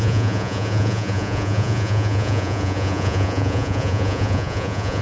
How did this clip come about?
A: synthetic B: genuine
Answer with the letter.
A